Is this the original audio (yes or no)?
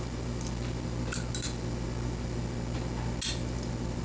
yes